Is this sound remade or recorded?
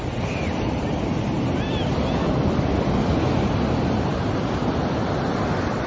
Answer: recorded